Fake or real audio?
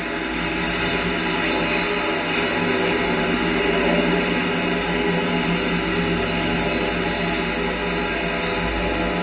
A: real